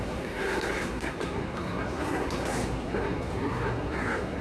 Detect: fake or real fake